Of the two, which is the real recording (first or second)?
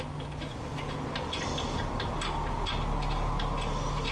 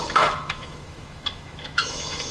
first